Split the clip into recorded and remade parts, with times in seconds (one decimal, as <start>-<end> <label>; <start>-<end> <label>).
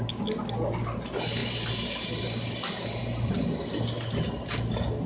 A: 0.0-5.1 recorded